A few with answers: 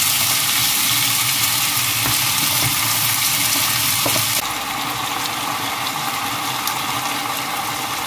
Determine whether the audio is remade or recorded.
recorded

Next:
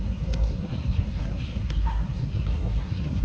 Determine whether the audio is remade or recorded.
remade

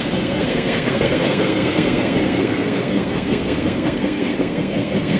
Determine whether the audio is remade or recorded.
remade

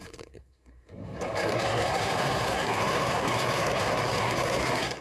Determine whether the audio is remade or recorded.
remade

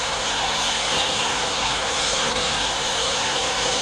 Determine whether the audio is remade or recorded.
remade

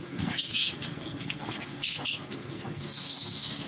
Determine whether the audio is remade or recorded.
remade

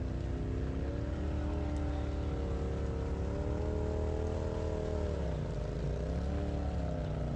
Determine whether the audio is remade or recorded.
recorded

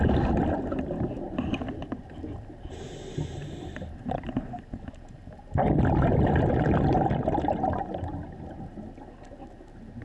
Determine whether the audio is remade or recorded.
recorded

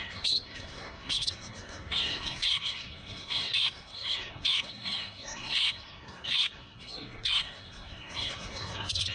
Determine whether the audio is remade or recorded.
remade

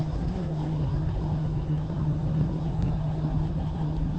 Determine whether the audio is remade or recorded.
remade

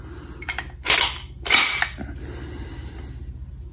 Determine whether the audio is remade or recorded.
recorded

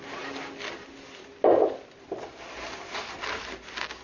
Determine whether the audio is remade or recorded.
recorded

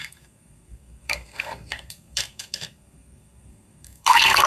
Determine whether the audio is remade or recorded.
remade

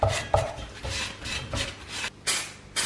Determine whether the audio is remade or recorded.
recorded